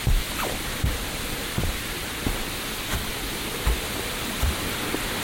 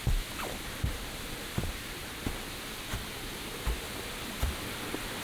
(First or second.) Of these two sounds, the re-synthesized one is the first